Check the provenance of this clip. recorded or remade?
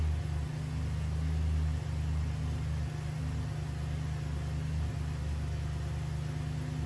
recorded